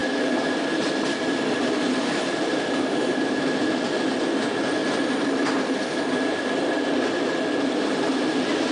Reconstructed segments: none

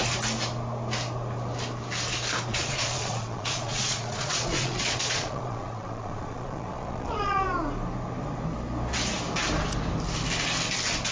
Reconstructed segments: 2.5-7.4 (vocoder, Vocos)

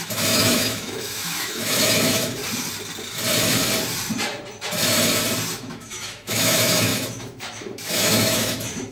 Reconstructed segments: 0.0-2.4 (autoencoder, DAC-VAE); 5.5-8.9

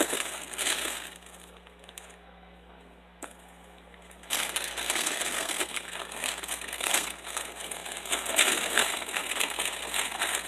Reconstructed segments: 0.0-10.5 (codec, SNAC)